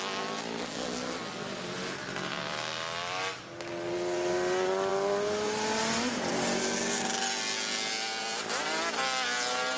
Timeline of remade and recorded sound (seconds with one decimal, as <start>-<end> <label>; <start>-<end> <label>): 0.0-9.8 recorded